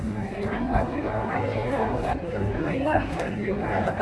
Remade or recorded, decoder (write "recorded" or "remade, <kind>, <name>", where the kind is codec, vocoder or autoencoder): remade, codec, SNAC